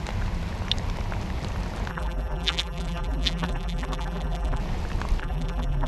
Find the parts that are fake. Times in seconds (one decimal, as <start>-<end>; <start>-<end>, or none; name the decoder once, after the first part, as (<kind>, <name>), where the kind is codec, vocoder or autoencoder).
1.9-4.6 (vocoder, BigVGAN v2); 5.2-5.9